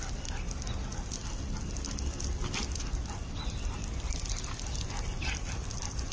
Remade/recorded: recorded